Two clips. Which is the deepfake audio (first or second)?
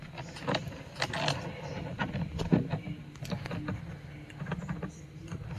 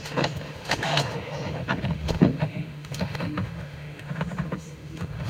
second